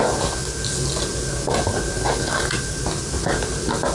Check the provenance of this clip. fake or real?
real